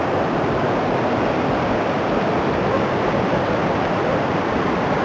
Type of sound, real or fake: fake